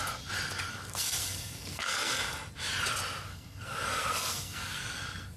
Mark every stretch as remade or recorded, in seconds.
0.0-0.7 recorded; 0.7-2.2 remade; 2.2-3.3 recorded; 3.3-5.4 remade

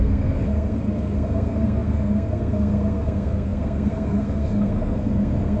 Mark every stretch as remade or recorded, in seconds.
0.0-5.6 remade

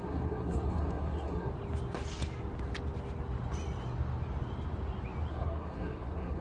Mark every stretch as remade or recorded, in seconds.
0.0-1.5 remade; 1.5-5.3 recorded; 5.3-6.4 remade

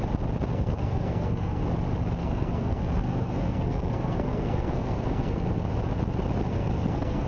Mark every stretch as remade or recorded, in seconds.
0.0-0.5 recorded; 0.5-1.6 remade; 1.6-2.2 recorded; 2.2-5.5 remade; 5.5-6.5 recorded; 6.5-7.3 remade

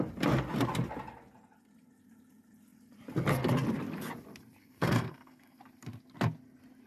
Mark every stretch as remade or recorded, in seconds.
0.0-4.6 recorded; 4.6-5.6 remade; 5.6-6.9 recorded